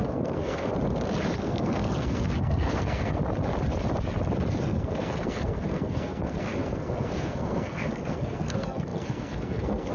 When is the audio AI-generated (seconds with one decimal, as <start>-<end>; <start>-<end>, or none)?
0.0-0.7; 1.4-3.2; 4.6-9.9